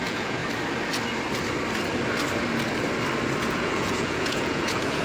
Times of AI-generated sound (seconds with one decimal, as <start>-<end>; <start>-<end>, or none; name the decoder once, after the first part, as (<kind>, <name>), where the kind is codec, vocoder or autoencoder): 0.0-0.4 (vocoder, Vocos); 3.4-5.0